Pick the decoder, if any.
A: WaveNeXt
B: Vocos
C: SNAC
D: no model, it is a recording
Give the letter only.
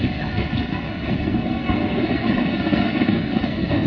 C